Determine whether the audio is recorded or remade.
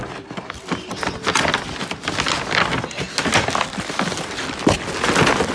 recorded